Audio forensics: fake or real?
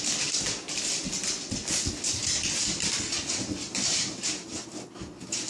real